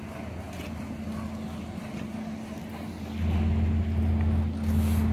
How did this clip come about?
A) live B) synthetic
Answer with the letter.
A